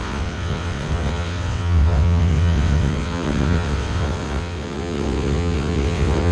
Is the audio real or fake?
fake